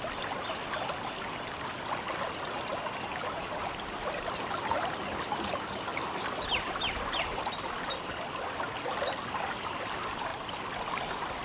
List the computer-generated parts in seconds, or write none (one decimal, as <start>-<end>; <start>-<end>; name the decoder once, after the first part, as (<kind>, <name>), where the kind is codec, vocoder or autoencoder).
none